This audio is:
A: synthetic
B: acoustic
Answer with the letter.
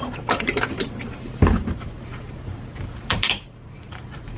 A